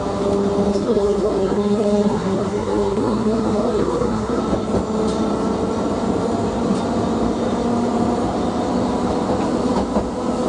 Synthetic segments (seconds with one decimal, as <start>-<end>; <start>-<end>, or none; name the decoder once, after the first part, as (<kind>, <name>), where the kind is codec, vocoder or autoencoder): 0.7-4.4 (codec, SNAC)